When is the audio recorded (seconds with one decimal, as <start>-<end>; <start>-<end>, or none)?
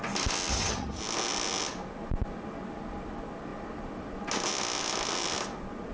0.0-0.5; 1.0-5.9